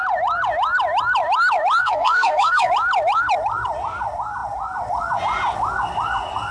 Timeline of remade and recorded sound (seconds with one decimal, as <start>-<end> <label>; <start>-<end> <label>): 0.0-1.8 recorded; 1.8-2.7 remade; 2.7-6.5 recorded